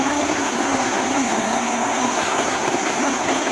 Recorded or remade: remade